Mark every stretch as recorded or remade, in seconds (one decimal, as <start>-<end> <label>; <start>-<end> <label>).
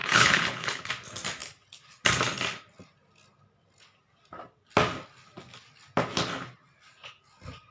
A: 0.0-0.9 remade; 0.9-7.7 recorded